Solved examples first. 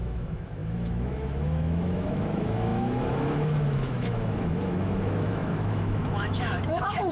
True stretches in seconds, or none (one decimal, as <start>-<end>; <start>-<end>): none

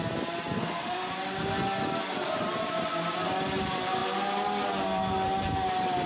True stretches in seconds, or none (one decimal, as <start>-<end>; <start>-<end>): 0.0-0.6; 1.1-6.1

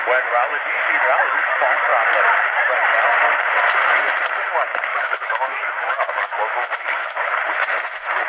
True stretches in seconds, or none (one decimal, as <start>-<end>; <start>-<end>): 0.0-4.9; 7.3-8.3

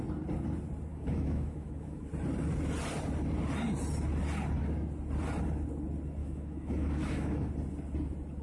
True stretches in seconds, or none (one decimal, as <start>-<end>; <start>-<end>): 0.0-0.9; 2.1-6.2; 7.5-8.4

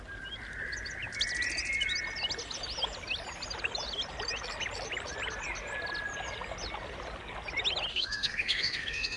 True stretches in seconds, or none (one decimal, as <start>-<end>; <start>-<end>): 0.0-7.9